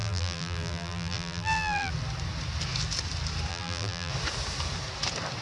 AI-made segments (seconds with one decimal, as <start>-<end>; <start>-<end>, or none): 0.0-1.9; 3.5-4.1